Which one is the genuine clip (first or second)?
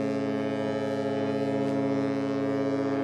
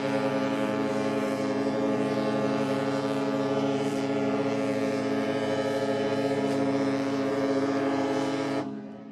first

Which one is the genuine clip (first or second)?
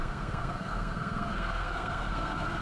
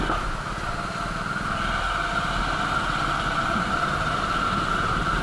second